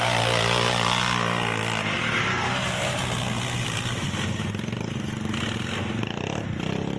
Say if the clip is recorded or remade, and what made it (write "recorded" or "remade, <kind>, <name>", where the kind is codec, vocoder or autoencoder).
recorded